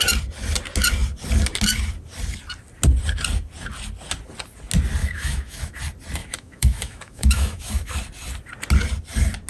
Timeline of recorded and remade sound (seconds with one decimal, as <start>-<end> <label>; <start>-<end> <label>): 0.0-5.0 recorded; 5.0-5.8 remade; 5.8-6.2 recorded; 6.2-7.9 remade; 7.9-9.5 recorded